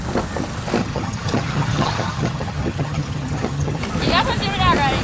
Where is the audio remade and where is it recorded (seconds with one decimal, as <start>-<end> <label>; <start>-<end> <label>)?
0.0-0.8 recorded; 0.8-3.8 remade; 3.8-5.0 recorded